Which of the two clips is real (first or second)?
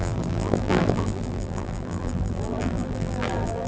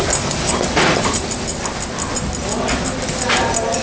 second